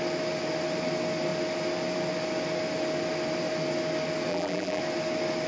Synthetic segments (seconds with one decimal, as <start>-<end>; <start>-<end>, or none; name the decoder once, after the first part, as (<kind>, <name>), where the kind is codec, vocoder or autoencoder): 4.3-4.8 (vocoder, BigVGAN v2)